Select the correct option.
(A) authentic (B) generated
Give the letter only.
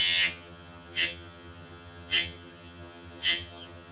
B